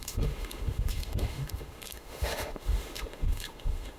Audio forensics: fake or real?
fake